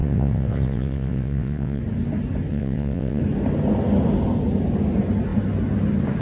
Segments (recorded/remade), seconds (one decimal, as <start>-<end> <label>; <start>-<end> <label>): 0.0-1.8 remade; 1.8-2.5 recorded; 2.5-3.2 remade; 3.2-6.2 recorded